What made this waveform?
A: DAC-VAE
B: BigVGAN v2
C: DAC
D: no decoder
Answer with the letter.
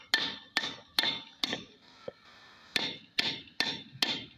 D